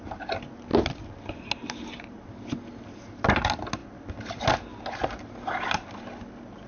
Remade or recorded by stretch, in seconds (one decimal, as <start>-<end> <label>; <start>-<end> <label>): 0.0-6.7 recorded